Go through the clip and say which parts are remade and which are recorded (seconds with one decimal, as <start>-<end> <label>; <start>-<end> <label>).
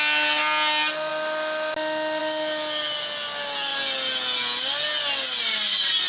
0.0-6.1 recorded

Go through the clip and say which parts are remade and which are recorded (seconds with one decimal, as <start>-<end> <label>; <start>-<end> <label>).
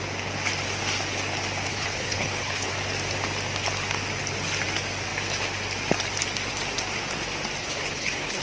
0.0-1.7 recorded; 1.7-2.7 remade; 2.7-7.6 recorded; 7.6-8.4 remade